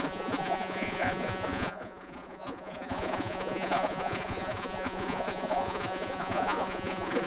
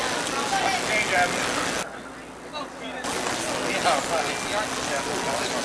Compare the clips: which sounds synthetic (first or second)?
first